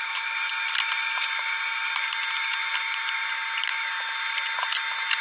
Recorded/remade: recorded